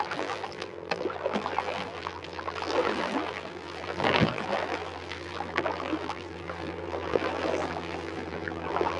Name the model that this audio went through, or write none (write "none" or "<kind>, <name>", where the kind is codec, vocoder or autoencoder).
vocoder, BigVGAN v2